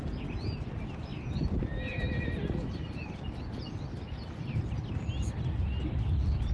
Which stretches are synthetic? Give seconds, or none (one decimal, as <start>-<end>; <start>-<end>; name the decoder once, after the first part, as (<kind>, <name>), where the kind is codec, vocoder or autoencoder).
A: none